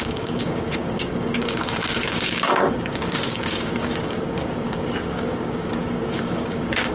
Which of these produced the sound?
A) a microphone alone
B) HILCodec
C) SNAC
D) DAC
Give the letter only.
D